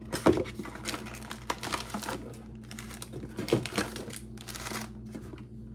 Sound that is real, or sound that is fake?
real